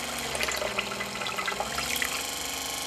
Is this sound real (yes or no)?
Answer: yes